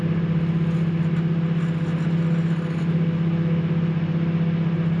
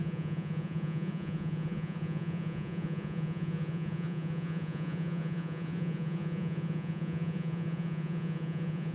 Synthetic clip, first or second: second